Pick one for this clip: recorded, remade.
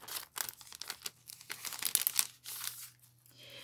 recorded